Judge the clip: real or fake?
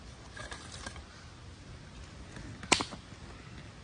real